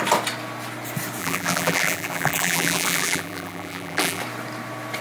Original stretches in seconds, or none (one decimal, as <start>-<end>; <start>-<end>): 0.0-1.2; 4.2-5.0